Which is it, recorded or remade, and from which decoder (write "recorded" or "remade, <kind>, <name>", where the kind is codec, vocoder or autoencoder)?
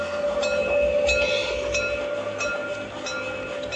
recorded